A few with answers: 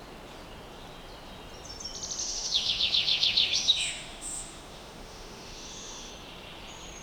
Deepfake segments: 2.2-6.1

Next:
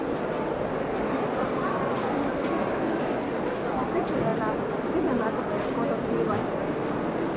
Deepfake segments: none